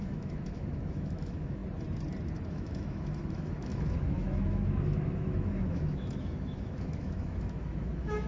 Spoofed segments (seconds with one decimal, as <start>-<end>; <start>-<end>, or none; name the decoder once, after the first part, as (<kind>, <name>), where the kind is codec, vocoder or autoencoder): 0.0-1.6 (autoencoder, DAC-VAE); 2.5-8.3